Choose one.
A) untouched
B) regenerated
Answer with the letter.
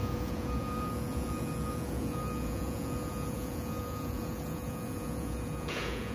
B